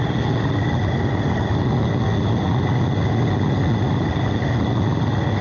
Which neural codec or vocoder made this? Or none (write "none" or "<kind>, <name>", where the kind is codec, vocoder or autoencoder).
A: none